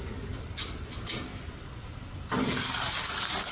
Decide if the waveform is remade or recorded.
recorded